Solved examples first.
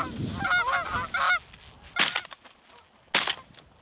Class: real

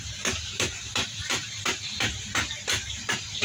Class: fake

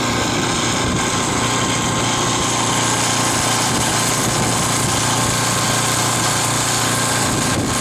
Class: real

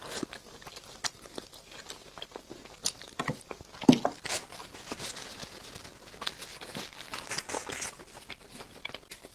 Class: real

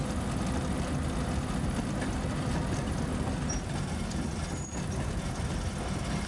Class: real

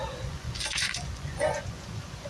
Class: fake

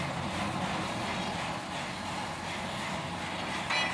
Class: real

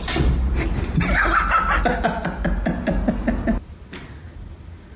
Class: real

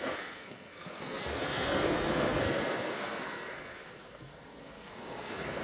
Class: fake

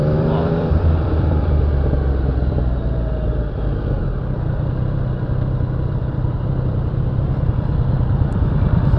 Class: fake